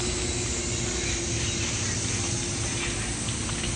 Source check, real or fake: real